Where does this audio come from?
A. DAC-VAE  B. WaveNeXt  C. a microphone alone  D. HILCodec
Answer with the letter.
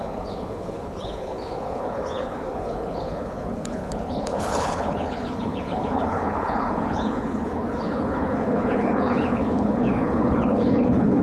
D